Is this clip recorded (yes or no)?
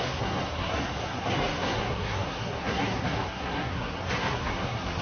no